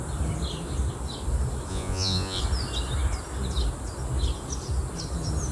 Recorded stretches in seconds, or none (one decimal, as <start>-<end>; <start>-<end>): 0.0-1.7; 2.4-5.5